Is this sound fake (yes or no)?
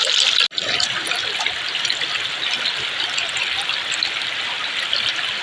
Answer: no